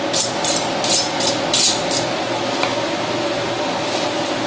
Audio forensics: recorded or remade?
recorded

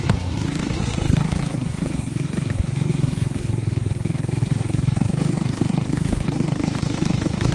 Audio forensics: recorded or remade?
remade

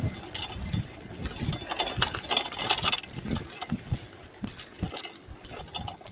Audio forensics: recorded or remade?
recorded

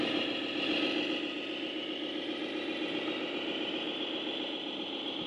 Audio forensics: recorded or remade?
remade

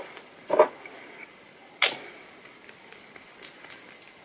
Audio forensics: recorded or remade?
recorded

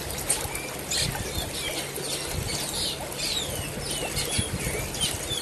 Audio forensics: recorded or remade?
recorded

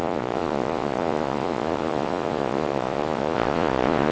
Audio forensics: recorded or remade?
remade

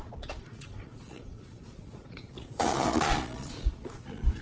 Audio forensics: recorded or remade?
remade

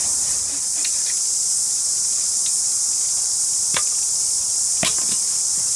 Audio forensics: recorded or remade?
recorded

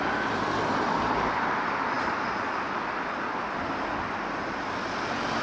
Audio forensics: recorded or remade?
recorded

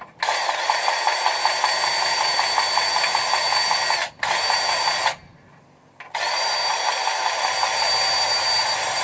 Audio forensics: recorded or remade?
recorded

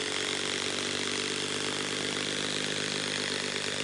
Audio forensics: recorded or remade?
recorded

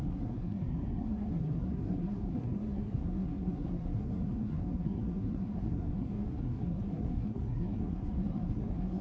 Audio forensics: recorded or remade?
remade